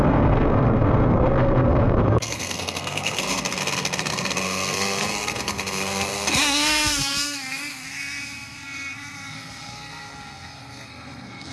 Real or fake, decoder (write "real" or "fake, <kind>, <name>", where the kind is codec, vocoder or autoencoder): fake, codec, SNAC